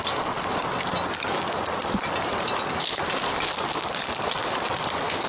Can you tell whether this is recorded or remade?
remade